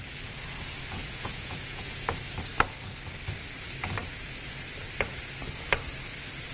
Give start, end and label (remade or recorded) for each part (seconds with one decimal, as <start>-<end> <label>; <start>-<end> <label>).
0.0-1.0 recorded; 1.0-2.1 remade; 2.1-6.5 recorded